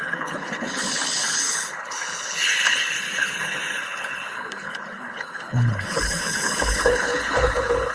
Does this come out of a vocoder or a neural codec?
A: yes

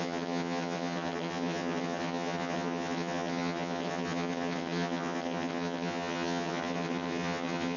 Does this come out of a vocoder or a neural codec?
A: yes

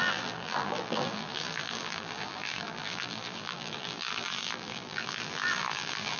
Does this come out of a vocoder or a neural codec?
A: yes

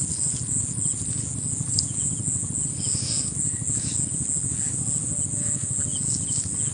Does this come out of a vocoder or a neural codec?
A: no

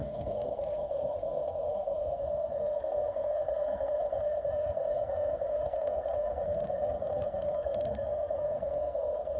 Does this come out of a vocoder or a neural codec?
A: yes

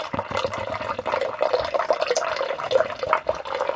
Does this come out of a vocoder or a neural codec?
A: no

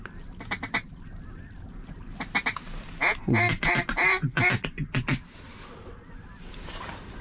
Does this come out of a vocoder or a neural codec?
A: no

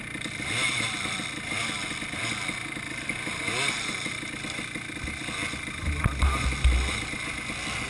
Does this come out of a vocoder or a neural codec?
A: no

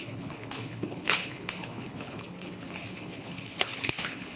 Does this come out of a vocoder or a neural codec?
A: yes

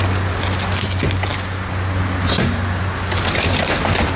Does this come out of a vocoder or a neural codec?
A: no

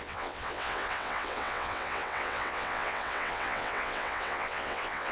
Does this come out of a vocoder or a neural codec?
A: yes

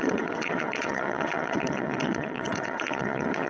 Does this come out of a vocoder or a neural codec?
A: yes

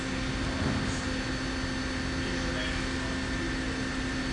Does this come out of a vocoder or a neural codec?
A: no